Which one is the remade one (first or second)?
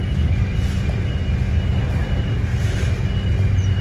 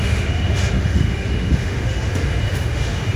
second